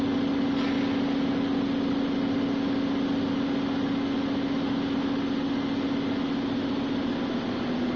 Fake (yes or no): no